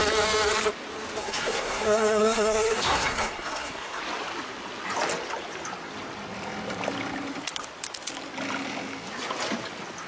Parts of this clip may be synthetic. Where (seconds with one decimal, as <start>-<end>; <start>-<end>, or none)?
1.2-4.0